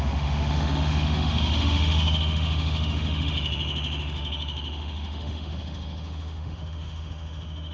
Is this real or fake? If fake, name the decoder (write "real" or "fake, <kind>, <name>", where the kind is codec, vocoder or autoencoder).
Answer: fake, autoencoder, DAC-VAE